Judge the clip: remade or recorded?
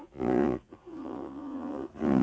remade